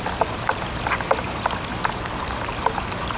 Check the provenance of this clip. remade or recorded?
recorded